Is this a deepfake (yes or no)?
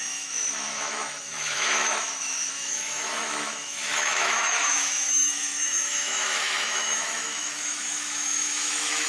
yes